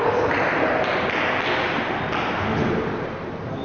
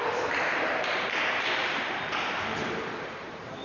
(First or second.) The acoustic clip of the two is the first